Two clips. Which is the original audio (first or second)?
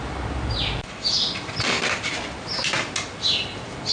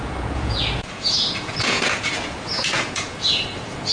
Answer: first